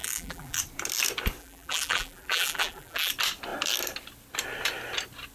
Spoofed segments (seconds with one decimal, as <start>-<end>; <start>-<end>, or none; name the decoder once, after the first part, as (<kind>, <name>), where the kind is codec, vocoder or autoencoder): 0.0-0.6 (vocoder, BigVGAN v2); 1.4-3.1